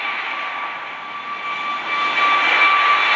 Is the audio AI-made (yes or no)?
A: no